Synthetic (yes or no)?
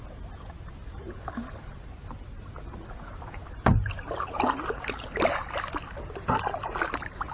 no